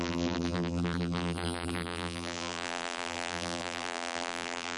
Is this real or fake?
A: fake